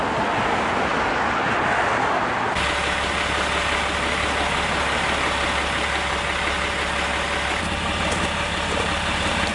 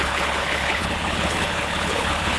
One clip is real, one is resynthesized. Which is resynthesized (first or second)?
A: second